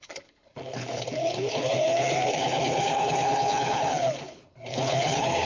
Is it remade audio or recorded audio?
remade